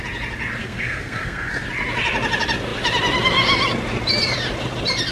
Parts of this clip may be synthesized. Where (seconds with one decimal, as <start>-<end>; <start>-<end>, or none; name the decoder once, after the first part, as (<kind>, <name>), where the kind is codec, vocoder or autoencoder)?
0.6-1.5 (codec, SNAC)